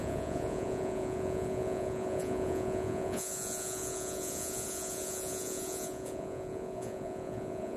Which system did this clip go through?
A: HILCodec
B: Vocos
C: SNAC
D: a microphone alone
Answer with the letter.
B